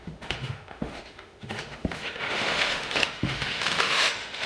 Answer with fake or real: fake